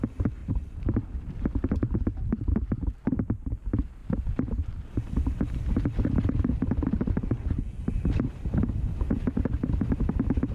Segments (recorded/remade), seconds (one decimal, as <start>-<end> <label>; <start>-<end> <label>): 0.0-0.4 recorded; 0.4-3.5 remade; 3.5-4.0 recorded; 4.0-7.6 remade; 7.6-10.5 recorded